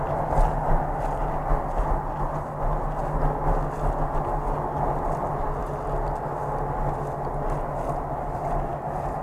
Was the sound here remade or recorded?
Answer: recorded